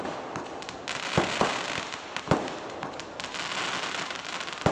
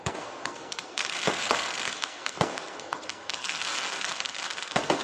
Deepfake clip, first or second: second